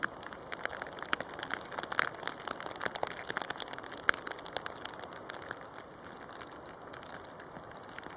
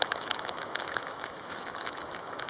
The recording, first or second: first